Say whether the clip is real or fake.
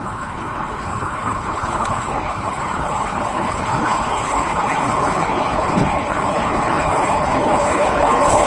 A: fake